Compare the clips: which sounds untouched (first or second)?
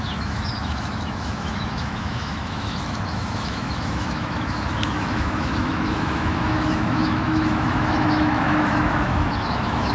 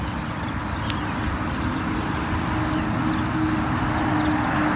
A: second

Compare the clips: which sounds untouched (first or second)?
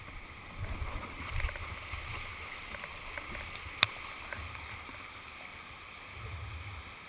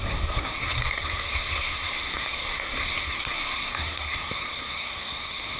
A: first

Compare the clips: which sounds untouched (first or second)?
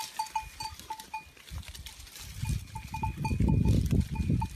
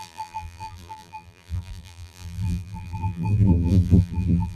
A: first